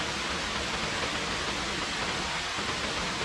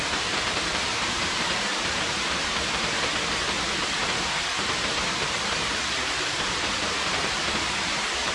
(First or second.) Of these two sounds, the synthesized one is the second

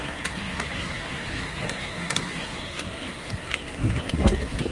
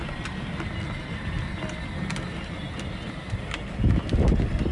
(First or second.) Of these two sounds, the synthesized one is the first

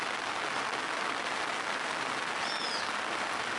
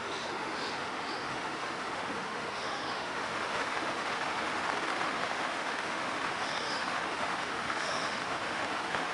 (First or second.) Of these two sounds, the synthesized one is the second